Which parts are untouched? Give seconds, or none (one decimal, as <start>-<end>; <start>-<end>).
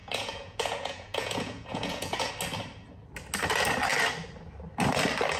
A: 2.3-5.4